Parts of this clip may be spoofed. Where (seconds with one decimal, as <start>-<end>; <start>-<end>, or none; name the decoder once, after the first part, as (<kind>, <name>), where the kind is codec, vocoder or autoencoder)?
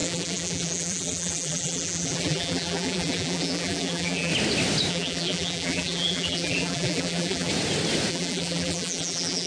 0.0-4.3 (vocoder, BigVGAN v2); 4.9-7.5; 8.1-9.5